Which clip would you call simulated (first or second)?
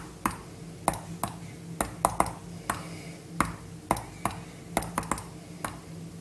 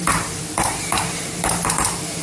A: second